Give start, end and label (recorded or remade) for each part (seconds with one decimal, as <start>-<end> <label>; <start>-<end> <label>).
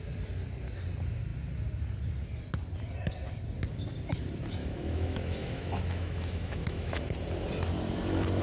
0.0-4.6 recorded; 4.6-7.0 remade; 7.0-8.4 recorded